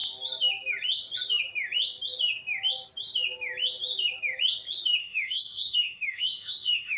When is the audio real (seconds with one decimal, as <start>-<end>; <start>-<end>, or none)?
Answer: 0.0-5.0